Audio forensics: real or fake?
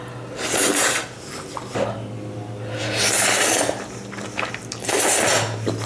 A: real